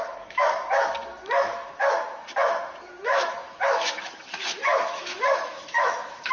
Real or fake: fake